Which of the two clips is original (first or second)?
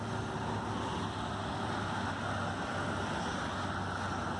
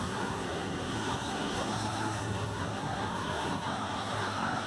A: first